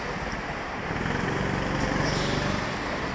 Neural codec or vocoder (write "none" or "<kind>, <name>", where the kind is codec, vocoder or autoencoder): none